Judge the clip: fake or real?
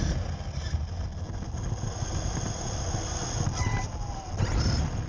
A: real